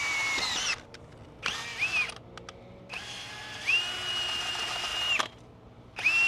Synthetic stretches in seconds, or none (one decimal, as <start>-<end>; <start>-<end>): none